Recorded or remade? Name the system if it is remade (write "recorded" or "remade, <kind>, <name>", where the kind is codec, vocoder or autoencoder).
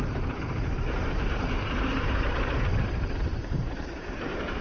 remade, vocoder, BigVGAN v2